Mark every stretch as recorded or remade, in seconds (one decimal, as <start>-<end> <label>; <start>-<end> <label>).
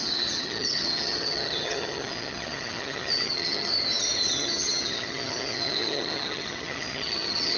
0.0-3.7 remade; 3.7-4.3 recorded; 4.3-7.6 remade